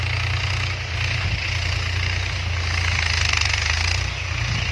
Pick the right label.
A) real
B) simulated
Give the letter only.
A